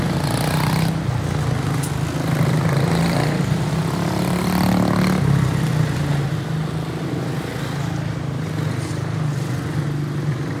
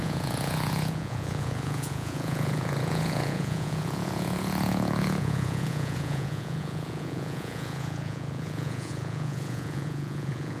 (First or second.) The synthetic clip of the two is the second